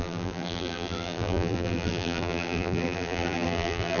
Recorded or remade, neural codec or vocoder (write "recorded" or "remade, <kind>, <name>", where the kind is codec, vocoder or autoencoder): remade, vocoder, BigVGAN v2